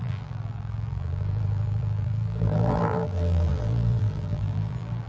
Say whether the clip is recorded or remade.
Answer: remade